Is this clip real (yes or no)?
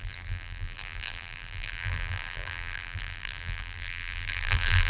no